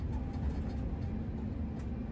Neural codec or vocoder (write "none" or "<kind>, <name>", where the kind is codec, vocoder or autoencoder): none